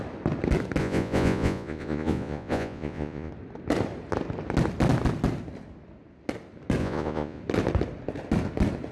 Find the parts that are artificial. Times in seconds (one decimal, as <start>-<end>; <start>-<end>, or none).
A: 0.8-3.3; 6.8-7.4